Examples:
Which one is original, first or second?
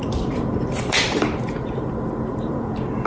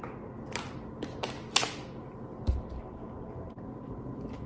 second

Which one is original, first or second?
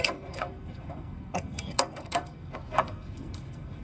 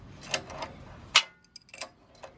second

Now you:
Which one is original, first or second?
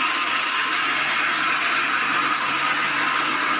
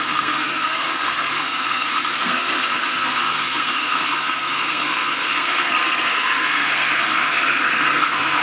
first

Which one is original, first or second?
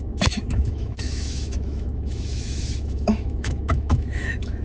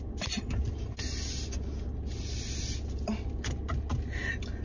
second